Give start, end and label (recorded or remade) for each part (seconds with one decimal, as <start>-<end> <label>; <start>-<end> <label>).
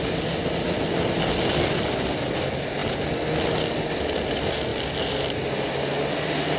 0.0-6.6 recorded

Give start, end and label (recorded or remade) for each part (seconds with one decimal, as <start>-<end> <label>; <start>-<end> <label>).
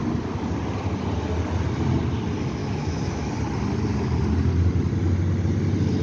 0.0-2.6 recorded; 2.6-3.3 remade; 3.3-6.0 recorded